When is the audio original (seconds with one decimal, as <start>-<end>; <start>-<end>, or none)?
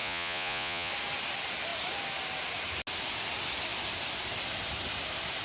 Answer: 0.9-5.4